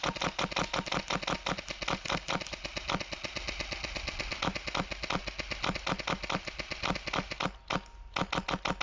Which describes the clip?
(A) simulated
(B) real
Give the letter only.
B